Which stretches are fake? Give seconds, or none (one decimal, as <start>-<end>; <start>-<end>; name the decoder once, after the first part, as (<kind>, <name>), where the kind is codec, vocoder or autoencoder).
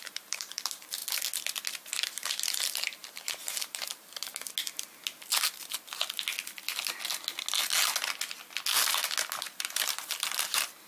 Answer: 0.0-1.0 (vocoder, BigVGAN v2); 1.7-4.3; 9.4-10.9